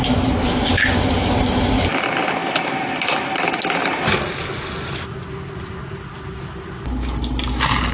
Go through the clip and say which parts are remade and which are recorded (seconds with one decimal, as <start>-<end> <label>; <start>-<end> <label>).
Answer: 0.0-7.9 recorded